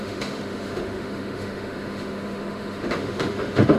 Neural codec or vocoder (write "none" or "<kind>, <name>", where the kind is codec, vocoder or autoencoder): autoencoder, DAC-VAE